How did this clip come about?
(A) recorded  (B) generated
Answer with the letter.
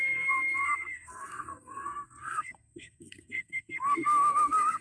B